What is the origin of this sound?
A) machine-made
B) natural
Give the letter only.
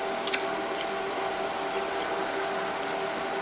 B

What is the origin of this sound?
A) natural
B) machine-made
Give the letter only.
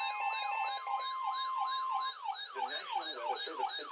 A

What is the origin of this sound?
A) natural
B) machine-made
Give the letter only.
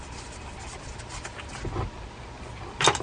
A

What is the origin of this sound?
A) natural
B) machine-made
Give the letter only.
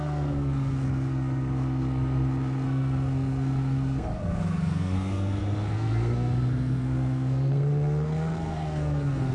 B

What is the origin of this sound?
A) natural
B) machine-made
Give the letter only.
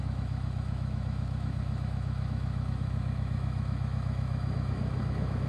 B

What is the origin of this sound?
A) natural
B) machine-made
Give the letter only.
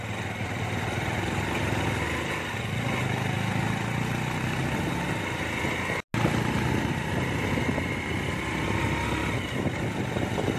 A